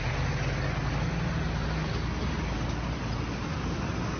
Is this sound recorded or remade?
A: recorded